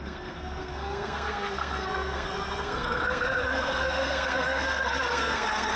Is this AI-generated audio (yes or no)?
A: yes